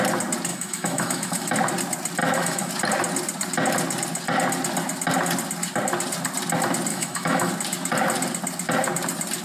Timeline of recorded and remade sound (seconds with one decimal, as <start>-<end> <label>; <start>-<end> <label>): 0.0-0.5 recorded; 0.5-1.5 remade; 1.5-2.2 recorded; 2.2-2.7 remade; 2.7-6.9 recorded; 6.9-7.5 remade; 7.5-9.4 recorded